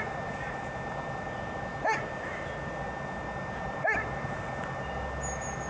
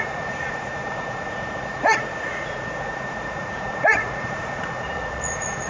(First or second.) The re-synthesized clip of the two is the second